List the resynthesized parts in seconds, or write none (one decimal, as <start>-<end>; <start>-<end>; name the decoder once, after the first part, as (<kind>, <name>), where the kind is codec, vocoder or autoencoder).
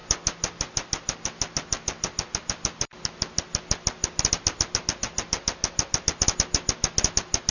none